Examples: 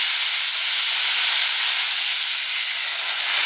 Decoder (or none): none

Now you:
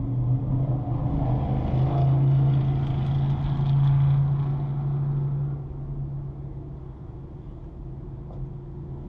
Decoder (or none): none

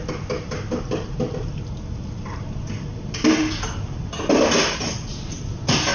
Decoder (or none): none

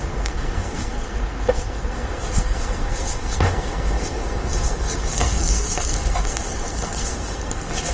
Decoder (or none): codec, SNAC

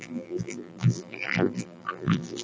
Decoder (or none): vocoder, BigVGAN v2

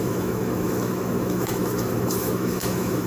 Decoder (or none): autoencoder, DAC-VAE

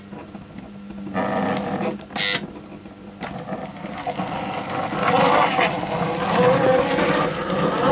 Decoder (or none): none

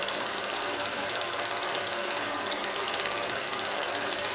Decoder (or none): codec, SNAC